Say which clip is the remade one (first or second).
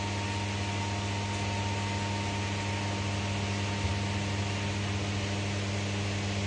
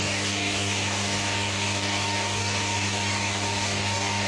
second